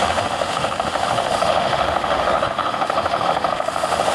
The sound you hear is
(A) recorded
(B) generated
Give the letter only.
B